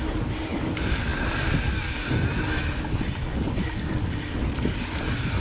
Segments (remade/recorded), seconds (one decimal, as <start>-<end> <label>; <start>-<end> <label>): 0.0-5.4 recorded

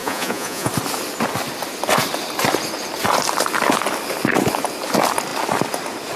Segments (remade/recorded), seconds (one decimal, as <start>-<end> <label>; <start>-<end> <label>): 0.0-0.7 remade; 0.7-6.2 recorded

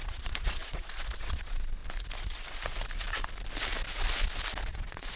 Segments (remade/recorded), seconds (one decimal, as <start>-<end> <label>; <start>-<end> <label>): 0.0-1.8 remade; 1.8-4.7 recorded; 4.7-5.2 remade

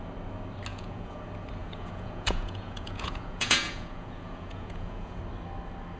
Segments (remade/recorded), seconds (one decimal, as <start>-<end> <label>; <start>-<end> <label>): 0.0-0.7 recorded; 0.7-1.2 remade; 1.2-1.6 recorded; 1.6-5.2 remade; 5.2-6.0 recorded

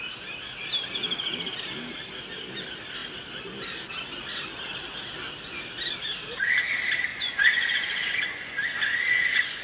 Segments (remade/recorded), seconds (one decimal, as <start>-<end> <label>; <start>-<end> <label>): 0.0-7.1 recorded; 7.1-9.6 remade

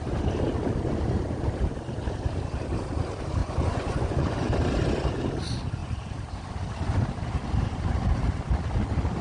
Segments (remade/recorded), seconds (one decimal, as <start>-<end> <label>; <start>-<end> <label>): 0.0-3.4 recorded; 3.4-4.5 remade; 4.5-9.2 recorded

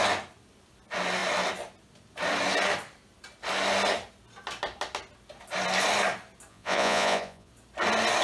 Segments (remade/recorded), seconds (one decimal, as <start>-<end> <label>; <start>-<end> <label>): 0.0-6.5 recorded; 6.5-7.5 remade; 7.5-8.2 recorded